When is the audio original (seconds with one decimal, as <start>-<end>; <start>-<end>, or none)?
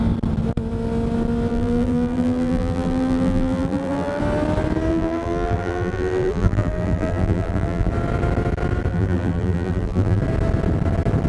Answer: 0.0-1.5; 4.2-4.9; 7.9-8.9; 10.2-11.3